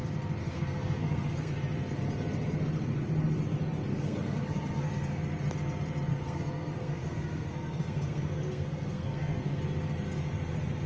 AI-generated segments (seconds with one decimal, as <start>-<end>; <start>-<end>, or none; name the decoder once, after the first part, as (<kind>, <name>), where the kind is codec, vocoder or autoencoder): 0.4-1.5 (codec, SNAC); 3.9-4.9; 6.1-9.6